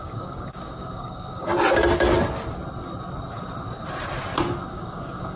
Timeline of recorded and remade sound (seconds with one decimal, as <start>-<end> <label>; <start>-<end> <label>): 0.0-1.5 remade; 1.5-4.7 recorded; 4.7-5.4 remade